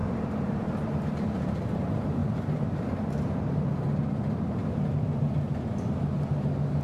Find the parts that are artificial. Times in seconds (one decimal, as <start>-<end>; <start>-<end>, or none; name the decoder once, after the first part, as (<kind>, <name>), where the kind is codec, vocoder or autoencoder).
0.0-1.1 (vocoder, BigVGAN v2); 2.2-5.7